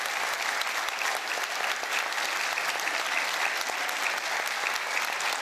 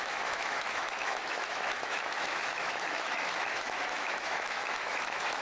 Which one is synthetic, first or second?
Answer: second